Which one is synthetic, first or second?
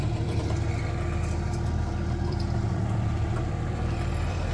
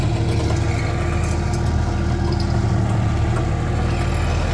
first